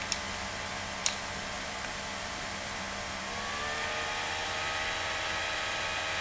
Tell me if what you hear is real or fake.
fake